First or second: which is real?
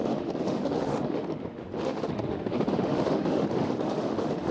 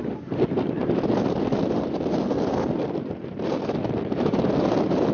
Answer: second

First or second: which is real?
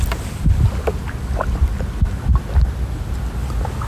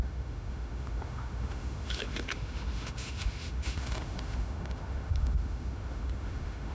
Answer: first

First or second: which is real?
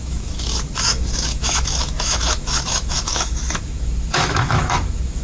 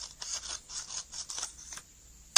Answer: second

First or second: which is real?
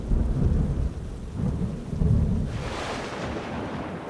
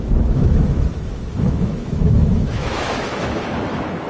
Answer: first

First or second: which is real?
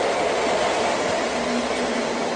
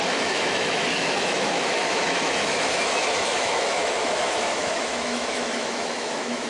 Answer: first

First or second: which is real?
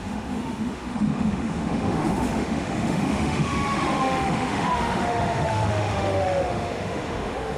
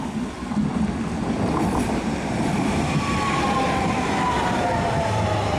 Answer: second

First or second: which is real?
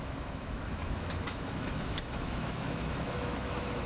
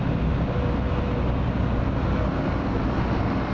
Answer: second